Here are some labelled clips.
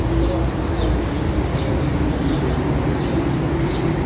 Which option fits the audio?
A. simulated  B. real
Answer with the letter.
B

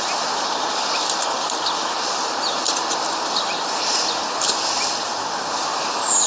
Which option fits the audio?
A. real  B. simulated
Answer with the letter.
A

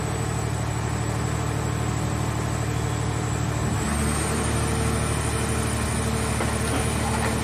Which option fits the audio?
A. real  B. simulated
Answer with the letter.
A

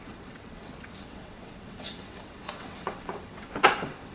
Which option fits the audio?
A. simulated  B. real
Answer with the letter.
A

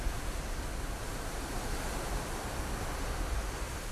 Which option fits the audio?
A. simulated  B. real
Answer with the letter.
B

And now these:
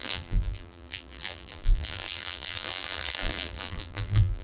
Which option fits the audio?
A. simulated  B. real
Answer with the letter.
A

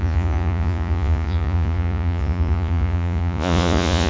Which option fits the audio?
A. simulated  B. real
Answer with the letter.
A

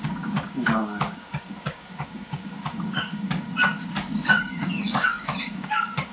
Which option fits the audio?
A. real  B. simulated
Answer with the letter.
B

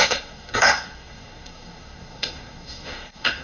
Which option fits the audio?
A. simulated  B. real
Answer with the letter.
A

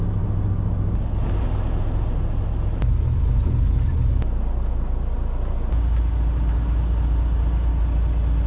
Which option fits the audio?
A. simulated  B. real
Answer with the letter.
B